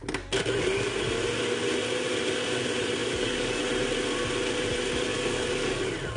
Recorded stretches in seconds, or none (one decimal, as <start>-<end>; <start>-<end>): 0.0-3.0; 3.6-5.1; 5.8-6.2